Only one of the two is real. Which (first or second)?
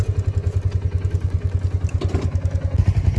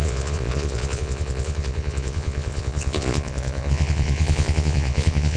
first